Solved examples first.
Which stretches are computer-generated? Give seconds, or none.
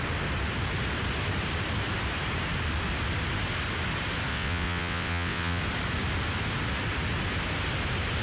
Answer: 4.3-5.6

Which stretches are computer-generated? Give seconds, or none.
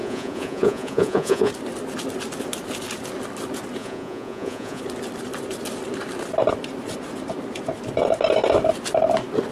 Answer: 0.0-1.5; 3.8-4.8